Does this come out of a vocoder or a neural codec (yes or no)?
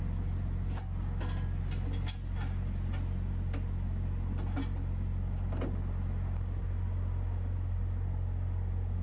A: no